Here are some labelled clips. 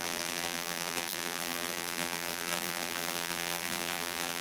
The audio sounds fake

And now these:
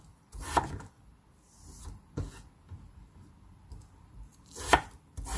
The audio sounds real